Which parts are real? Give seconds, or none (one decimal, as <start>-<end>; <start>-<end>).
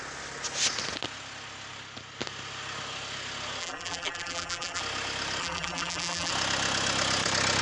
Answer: 0.0-3.6; 4.8-5.4; 6.3-7.6